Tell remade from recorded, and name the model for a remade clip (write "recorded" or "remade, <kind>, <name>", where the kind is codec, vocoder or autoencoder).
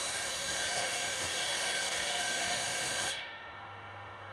remade, autoencoder, DAC-VAE